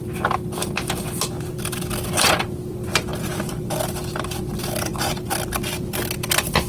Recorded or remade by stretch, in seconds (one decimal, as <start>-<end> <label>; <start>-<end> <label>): 0.0-6.7 recorded